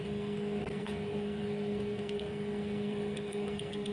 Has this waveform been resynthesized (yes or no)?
yes